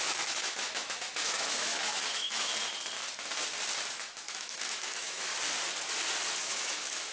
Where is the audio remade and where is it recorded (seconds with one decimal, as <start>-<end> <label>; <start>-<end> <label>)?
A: 0.0-2.5 remade; 2.5-3.9 recorded; 3.9-5.3 remade; 5.3-6.4 recorded; 6.4-7.1 remade